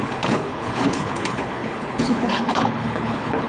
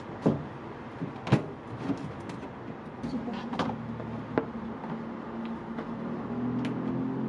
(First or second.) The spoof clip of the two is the first